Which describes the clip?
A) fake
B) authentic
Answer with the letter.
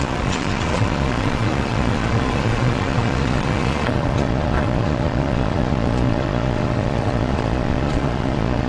A